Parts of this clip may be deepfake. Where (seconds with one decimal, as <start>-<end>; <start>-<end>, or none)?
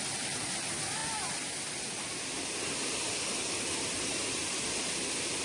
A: none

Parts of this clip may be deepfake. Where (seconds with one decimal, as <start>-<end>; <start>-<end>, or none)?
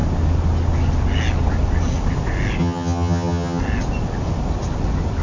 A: 2.6-3.6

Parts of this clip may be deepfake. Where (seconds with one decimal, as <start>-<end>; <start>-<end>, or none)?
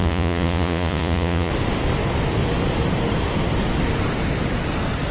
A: 0.0-1.5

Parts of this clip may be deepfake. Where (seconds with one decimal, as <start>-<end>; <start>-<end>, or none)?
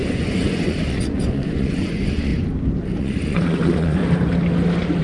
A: 0.0-2.3; 3.0-4.0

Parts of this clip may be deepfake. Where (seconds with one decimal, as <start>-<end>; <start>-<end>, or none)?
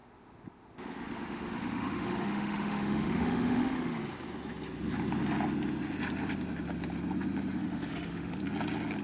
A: 0.0-4.0; 7.6-8.4